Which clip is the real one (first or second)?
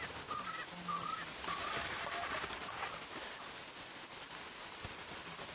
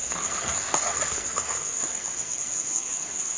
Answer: first